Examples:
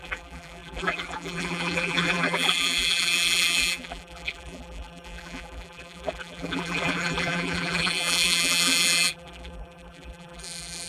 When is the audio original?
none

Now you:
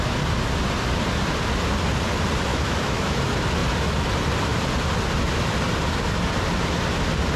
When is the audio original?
0.0-2.5; 3.2-7.4